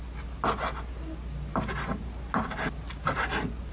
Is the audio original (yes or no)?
yes